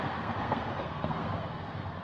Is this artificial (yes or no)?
yes